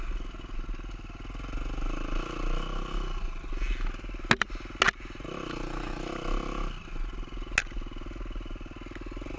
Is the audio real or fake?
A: real